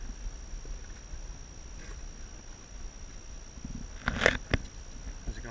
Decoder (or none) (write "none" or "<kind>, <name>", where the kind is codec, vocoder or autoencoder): none